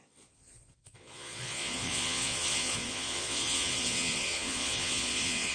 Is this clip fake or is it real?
fake